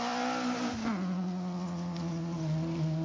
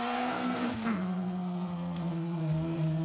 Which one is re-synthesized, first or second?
second